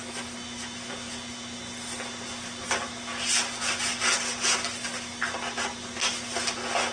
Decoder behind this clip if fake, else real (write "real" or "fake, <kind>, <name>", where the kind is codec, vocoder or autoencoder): real